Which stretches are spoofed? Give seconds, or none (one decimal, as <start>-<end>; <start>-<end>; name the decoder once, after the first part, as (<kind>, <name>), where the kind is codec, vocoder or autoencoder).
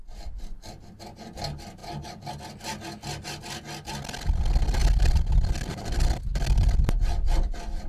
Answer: none